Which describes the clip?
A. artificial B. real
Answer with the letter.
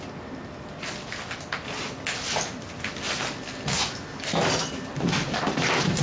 B